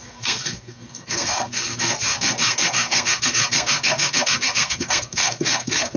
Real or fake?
fake